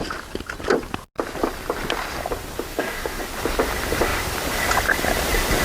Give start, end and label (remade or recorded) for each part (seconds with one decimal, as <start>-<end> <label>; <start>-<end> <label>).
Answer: 0.0-2.7 recorded; 2.7-3.2 remade; 3.2-5.6 recorded